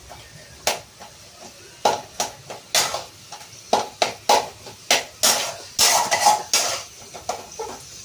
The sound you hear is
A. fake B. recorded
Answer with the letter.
B